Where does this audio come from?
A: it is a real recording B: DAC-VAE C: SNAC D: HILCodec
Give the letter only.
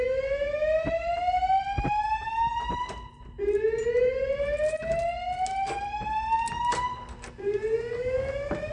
A